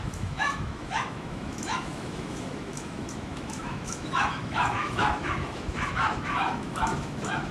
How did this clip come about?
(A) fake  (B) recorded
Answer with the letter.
A